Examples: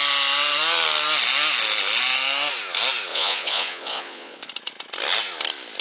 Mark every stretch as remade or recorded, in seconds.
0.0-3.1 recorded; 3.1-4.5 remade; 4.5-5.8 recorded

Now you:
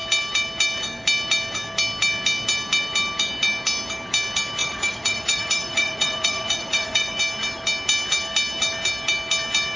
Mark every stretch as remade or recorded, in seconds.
0.0-4.6 recorded; 4.6-7.2 remade; 7.2-9.8 recorded